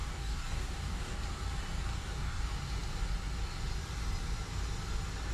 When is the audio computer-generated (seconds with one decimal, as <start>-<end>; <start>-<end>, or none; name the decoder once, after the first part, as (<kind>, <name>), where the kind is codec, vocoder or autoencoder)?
0.0-1.2 (codec, DAC); 1.9-2.4